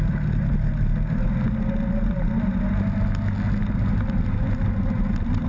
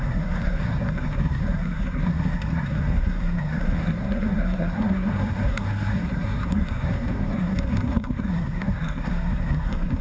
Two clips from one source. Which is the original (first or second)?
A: first